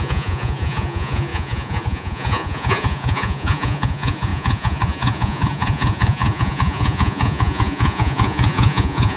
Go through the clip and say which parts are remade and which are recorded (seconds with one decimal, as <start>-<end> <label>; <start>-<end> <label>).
0.0-9.2 remade